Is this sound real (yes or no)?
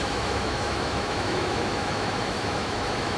no